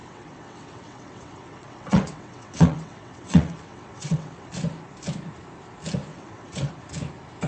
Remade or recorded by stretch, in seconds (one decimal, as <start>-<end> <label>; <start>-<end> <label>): 0.0-4.5 remade; 4.5-6.1 recorded; 6.1-6.7 remade; 6.7-7.5 recorded